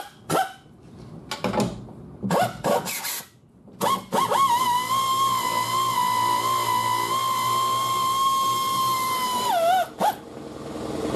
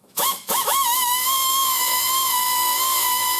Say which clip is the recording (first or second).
first